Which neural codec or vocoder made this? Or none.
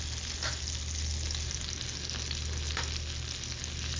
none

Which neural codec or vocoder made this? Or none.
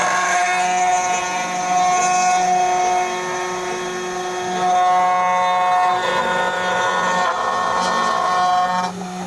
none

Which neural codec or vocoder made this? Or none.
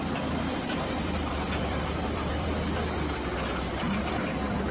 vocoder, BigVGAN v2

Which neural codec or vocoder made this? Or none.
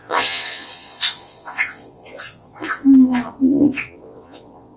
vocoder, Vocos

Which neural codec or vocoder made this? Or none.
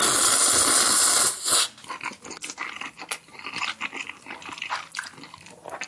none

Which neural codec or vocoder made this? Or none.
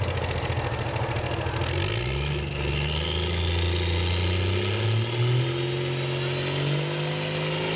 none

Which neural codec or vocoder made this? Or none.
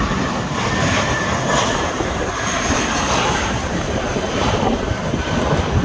vocoder, BigVGAN v2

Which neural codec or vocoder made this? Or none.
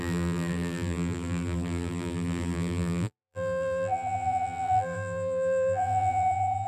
vocoder, BigVGAN v2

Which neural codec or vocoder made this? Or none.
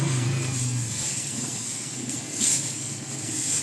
codec, SNAC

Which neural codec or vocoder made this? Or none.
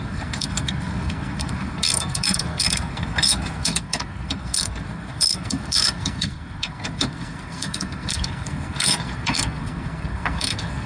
codec, SNAC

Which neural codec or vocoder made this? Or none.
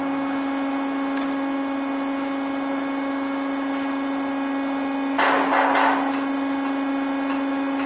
none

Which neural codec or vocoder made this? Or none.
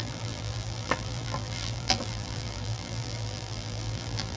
vocoder, BigVGAN v2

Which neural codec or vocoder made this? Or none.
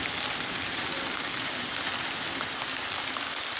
none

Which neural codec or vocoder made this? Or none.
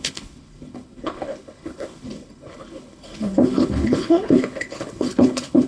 codec, HILCodec